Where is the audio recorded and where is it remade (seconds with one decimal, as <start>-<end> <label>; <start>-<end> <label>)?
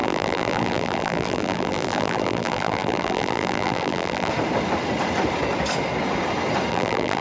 0.0-4.3 remade; 4.3-6.7 recorded; 6.7-7.2 remade